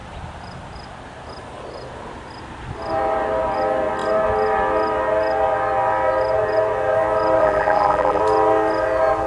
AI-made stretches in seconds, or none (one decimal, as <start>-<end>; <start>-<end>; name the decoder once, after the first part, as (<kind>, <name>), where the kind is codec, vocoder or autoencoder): 7.4-8.2 (vocoder, BigVGAN v2)